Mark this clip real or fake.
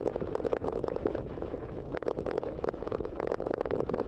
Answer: fake